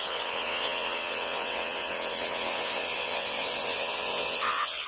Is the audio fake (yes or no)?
yes